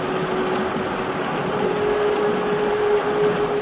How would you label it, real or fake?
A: real